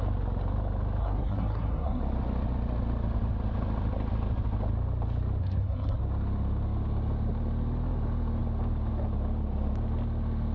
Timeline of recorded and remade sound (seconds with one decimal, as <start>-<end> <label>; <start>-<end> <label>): 0.0-1.0 recorded; 1.0-2.0 remade; 2.0-5.4 recorded; 5.4-6.0 remade; 6.0-10.5 recorded